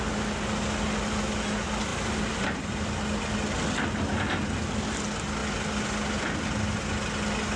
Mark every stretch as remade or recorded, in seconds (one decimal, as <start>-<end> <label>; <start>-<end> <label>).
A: 0.0-1.9 recorded; 1.9-2.6 remade; 2.6-7.6 recorded